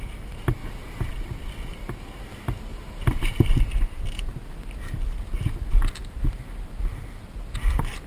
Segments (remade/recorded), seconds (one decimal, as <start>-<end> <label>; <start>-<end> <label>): 0.0-0.6 recorded; 0.6-1.1 remade; 1.1-2.7 recorded; 2.7-3.6 remade; 3.6-6.0 recorded; 6.0-6.7 remade; 6.7-8.1 recorded

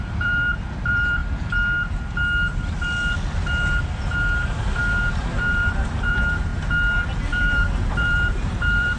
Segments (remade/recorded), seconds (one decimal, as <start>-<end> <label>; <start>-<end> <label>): 0.0-1.2 remade; 1.2-5.1 recorded; 5.1-6.5 remade; 6.5-7.1 recorded; 7.1-9.0 remade

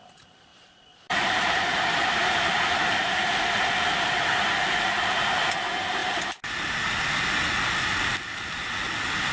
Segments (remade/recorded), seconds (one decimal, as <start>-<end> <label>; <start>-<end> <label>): 0.0-0.5 recorded; 0.5-2.6 remade; 2.6-9.3 recorded

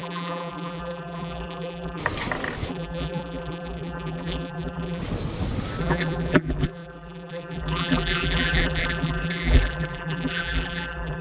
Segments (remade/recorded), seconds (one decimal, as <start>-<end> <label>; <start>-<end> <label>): 0.0-2.0 remade; 2.0-2.7 recorded; 2.7-5.0 remade; 5.0-5.8 recorded; 5.8-11.2 remade

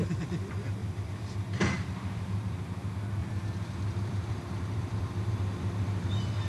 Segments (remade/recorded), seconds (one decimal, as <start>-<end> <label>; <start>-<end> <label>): 0.0-0.8 recorded; 0.8-2.7 remade; 2.7-3.2 recorded; 3.2-5.4 remade; 5.4-6.5 recorded

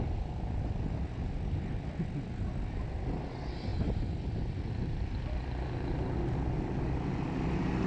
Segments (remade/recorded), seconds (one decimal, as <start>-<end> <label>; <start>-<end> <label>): 0.0-7.9 recorded